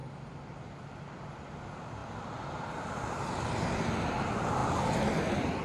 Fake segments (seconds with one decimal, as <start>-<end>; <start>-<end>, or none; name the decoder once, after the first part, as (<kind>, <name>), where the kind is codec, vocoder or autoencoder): 0.0-0.6 (vocoder, BigVGAN v2); 2.0-3.7